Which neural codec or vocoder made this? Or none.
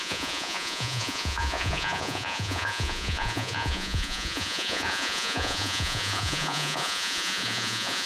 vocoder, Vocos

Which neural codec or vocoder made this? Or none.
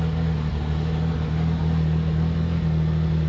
none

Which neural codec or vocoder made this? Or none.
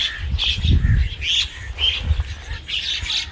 none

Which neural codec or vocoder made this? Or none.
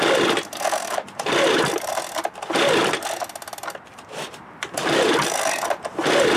none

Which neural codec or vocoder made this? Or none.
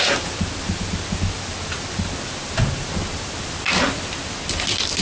none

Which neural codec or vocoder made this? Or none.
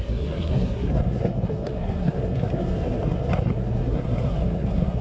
codec, SNAC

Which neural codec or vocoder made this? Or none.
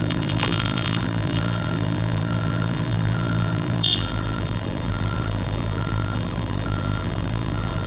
vocoder, BigVGAN v2